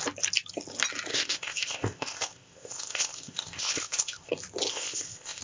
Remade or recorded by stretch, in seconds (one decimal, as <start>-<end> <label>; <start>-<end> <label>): 0.0-1.1 recorded; 1.1-4.3 remade; 4.3-4.7 recorded; 4.7-5.4 remade